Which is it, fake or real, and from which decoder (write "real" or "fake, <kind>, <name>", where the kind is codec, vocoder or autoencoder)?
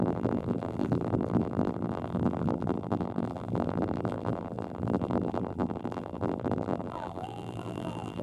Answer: fake, vocoder, BigVGAN v2